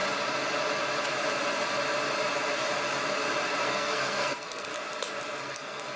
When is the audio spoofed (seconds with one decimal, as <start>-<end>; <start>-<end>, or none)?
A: 3.6-4.7; 5.4-6.0